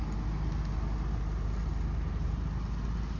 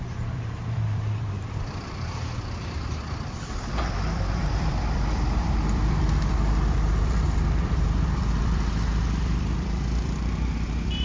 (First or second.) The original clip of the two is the first